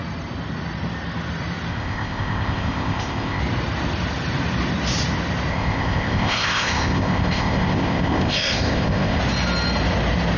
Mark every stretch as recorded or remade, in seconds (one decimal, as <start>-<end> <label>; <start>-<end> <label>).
0.0-1.7 recorded; 1.7-3.4 remade; 3.4-5.5 recorded; 5.5-9.2 remade; 9.2-10.4 recorded